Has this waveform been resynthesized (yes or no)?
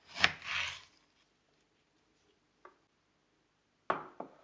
no